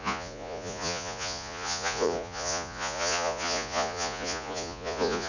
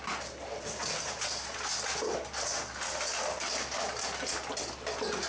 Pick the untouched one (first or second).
second